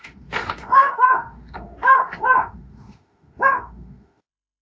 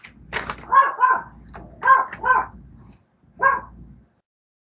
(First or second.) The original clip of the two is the second